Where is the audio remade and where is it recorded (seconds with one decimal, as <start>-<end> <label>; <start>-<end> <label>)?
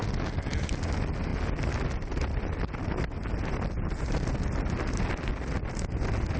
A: 0.0-6.4 recorded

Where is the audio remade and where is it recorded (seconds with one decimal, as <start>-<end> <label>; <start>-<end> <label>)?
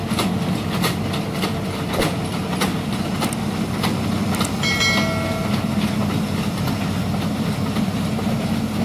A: 0.0-8.8 recorded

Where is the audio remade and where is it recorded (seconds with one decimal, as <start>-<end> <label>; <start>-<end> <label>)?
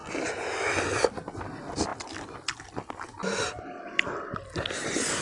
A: 0.0-5.2 recorded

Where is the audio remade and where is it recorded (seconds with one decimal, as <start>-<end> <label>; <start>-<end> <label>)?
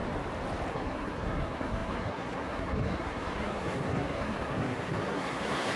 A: 0.0-0.7 recorded; 0.7-5.8 remade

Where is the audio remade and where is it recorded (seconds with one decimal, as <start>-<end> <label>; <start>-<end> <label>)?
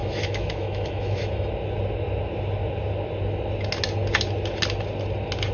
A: 0.0-1.5 remade; 1.5-5.5 recorded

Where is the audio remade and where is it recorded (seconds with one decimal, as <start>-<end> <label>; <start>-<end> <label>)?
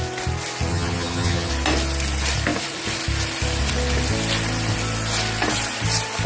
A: 0.0-0.7 recorded; 0.7-1.5 remade; 1.5-6.3 recorded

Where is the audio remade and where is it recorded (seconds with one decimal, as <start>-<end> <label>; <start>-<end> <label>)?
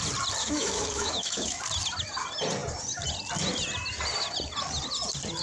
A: 0.0-0.4 recorded; 0.4-1.6 remade; 1.6-5.4 recorded